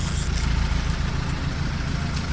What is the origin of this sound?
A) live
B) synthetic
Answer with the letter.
A